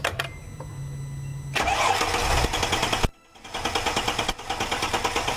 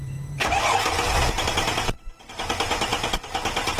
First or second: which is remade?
second